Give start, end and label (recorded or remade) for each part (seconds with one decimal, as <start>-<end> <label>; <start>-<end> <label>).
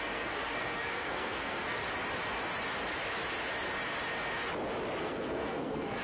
0.0-1.8 remade; 1.8-5.0 recorded; 5.0-6.0 remade